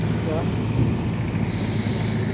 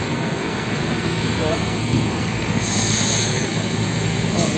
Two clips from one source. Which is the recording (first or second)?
first